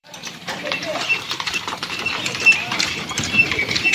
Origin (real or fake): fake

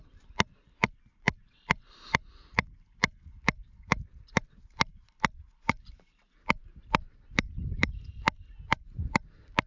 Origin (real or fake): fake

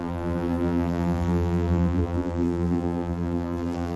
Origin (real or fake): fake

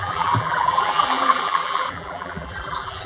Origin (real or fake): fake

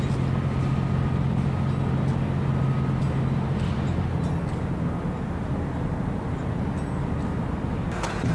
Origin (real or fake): real